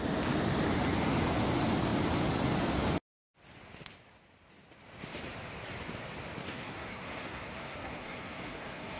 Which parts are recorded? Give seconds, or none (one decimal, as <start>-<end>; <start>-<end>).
0.0-6.4